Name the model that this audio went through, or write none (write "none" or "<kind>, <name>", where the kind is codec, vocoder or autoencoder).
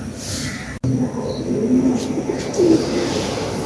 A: none